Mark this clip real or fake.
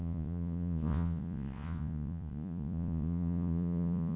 fake